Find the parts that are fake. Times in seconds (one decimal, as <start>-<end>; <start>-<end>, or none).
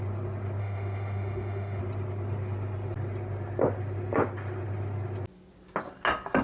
0.6-1.8